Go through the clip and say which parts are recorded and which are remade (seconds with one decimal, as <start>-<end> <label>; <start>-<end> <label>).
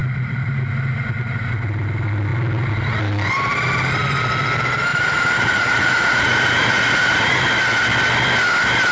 0.0-0.5 remade; 0.5-4.9 recorded; 4.9-7.4 remade; 7.4-8.9 recorded